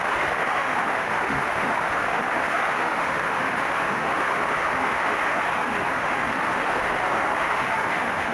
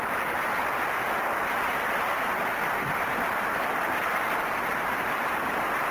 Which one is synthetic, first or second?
first